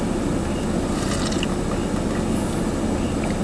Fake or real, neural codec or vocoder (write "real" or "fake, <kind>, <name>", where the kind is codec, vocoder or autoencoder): real